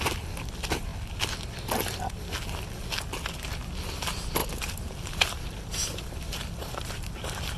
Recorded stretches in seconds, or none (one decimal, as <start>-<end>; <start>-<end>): 0.0-4.4